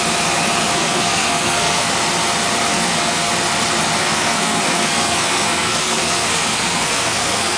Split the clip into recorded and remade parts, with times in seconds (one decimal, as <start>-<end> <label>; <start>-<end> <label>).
0.0-0.7 recorded; 0.7-1.9 remade; 1.9-2.7 recorded; 2.7-3.3 remade; 3.3-4.0 recorded; 4.0-7.6 remade